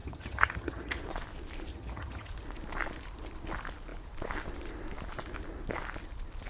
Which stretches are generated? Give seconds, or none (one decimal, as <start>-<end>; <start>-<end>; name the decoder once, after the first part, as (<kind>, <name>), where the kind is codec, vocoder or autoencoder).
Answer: 0.0-1.0 (vocoder, HiFi-GAN); 1.7-2.3